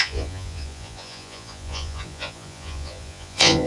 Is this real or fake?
fake